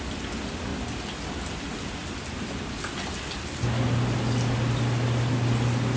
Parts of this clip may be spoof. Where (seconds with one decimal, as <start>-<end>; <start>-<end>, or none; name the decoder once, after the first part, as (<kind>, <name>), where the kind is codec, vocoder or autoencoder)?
0.7-1.5 (vocoder, BigVGAN v2); 2.0-2.9